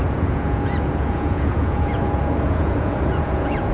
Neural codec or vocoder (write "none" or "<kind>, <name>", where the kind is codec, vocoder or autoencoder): vocoder, Vocos